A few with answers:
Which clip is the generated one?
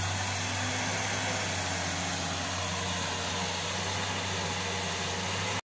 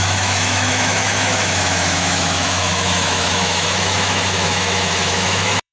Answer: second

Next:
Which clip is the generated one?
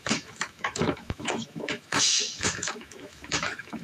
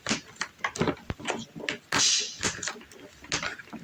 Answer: first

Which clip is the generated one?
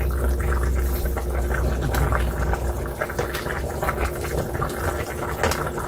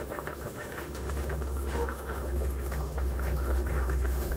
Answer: second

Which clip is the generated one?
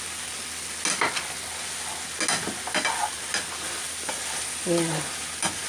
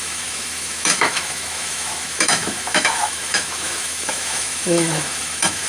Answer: second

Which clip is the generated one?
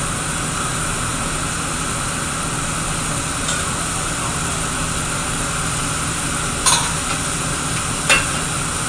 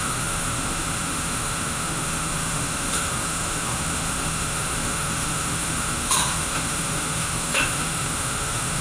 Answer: second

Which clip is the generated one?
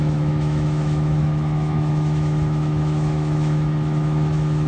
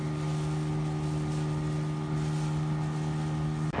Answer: first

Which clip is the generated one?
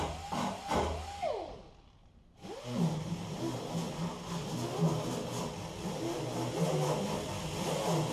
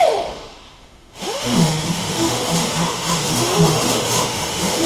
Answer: second